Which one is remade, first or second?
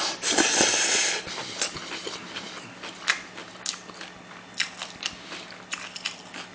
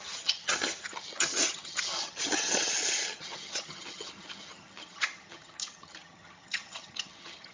second